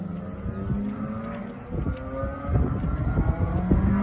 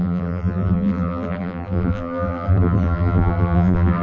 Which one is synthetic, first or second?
second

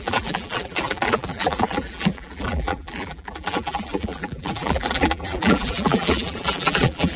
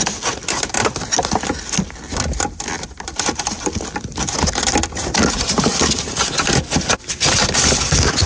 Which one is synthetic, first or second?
first